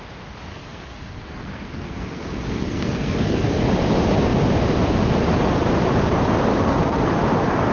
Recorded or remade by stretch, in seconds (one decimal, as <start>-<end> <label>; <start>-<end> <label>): 0.0-0.5 recorded; 0.5-3.5 remade; 3.5-6.6 recorded; 6.6-7.1 remade; 7.1-7.7 recorded